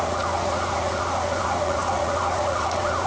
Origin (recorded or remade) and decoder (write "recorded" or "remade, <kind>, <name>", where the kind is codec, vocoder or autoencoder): remade, vocoder, Vocos